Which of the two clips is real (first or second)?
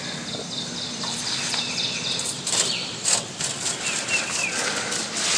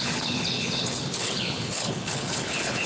first